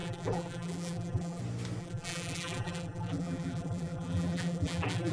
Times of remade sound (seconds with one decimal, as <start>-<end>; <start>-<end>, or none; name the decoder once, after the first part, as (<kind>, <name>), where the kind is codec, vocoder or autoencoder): 0.0-1.4 (vocoder, BigVGAN v2); 1.8-5.1

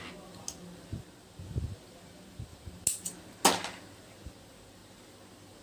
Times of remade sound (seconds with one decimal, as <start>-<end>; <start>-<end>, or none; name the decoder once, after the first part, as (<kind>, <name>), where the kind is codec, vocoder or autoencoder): none

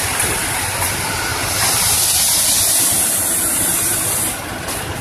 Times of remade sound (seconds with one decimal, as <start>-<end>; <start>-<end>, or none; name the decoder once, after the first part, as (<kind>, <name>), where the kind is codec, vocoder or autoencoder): none

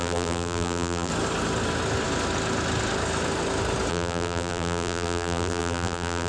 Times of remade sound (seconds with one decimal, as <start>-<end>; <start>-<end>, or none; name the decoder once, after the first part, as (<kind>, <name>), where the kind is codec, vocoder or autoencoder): 0.0-1.1 (vocoder, BigVGAN v2); 3.9-6.3

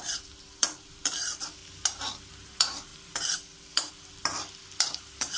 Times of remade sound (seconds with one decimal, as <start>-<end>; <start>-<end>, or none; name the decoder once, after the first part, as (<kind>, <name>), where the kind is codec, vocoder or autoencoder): 0.0-1.6 (vocoder, BigVGAN v2); 2.3-5.4